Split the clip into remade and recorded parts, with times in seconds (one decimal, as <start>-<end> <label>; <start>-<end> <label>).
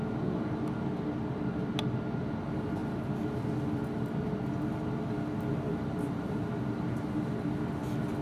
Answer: 0.0-5.7 recorded; 5.7-6.4 remade; 6.4-8.2 recorded